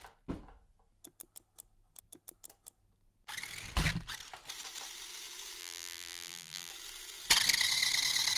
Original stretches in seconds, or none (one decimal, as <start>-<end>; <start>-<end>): 0.0-5.6; 6.7-8.4